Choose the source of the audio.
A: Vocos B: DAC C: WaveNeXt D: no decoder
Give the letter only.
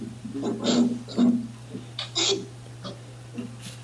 D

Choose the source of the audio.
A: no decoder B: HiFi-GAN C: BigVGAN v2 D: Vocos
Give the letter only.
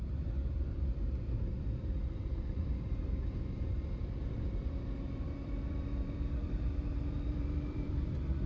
C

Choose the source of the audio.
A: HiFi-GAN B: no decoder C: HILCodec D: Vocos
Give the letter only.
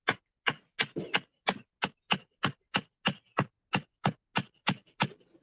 B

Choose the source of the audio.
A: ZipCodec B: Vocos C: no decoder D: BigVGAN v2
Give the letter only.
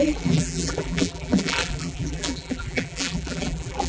D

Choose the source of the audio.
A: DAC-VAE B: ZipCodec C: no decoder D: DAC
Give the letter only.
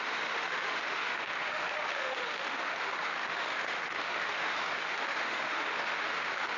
A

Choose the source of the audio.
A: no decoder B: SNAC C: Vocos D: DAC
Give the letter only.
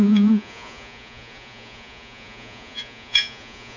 C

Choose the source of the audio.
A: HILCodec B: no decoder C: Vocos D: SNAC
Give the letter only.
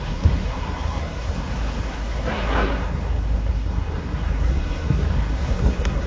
D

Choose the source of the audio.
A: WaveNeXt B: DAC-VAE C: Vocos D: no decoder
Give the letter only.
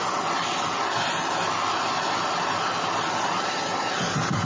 D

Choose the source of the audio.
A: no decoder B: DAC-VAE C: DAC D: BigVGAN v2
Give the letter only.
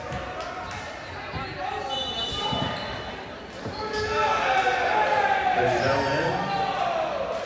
A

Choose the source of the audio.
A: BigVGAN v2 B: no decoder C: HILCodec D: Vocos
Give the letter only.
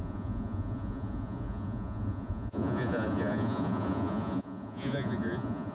D